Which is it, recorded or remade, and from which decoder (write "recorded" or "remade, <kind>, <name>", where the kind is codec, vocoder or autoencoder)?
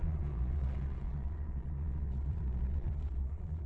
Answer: remade, vocoder, Vocos